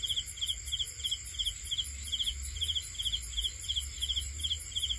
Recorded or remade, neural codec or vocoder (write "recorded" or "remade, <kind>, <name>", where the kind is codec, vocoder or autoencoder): recorded